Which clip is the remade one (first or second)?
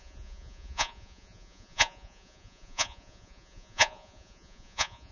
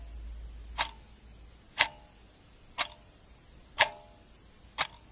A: first